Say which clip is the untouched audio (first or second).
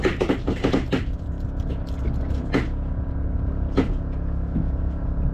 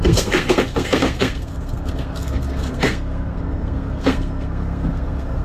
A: first